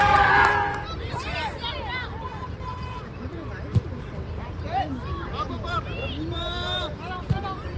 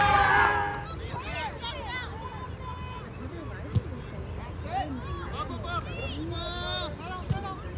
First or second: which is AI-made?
first